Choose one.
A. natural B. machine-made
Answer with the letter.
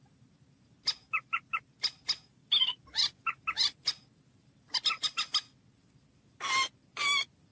A